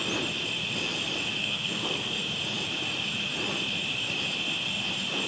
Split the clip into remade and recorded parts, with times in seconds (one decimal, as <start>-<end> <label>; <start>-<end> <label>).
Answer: 0.0-1.4 recorded; 1.4-2.2 remade; 2.2-5.3 recorded